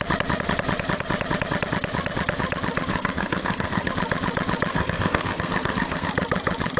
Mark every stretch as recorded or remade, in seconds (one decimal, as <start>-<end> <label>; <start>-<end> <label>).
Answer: 0.0-2.9 recorded; 2.9-3.9 remade; 3.9-4.7 recorded; 4.7-6.1 remade; 6.1-6.8 recorded